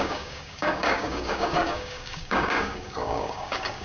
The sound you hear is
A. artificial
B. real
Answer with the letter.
A